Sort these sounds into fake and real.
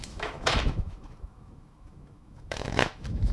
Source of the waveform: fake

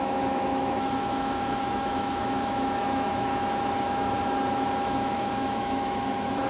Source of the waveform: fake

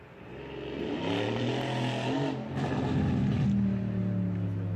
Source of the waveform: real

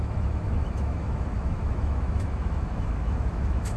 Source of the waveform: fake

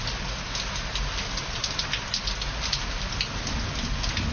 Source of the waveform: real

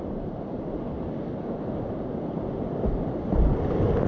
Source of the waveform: real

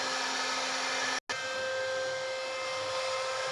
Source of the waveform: real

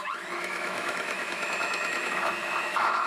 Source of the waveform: fake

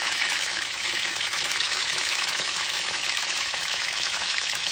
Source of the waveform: fake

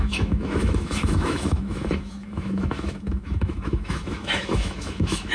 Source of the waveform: fake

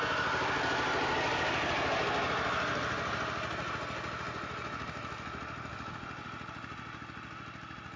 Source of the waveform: real